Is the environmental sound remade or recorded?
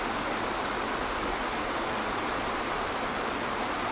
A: recorded